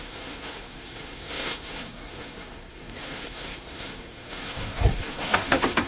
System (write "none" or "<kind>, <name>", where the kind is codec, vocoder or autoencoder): codec, SNAC